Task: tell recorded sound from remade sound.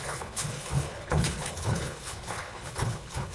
remade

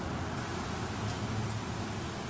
recorded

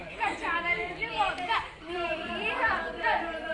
remade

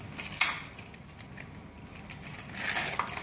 recorded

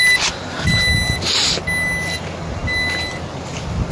recorded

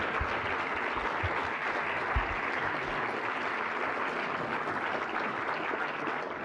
recorded